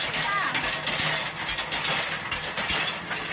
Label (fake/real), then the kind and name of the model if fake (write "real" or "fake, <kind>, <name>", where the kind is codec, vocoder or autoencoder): real